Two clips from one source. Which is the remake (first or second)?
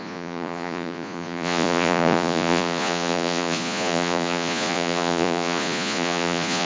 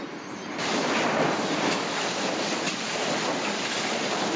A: first